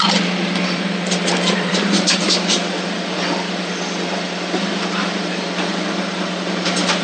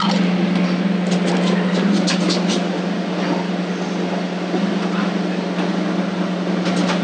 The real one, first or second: second